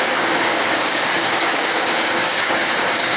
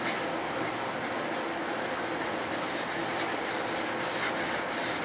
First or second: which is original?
second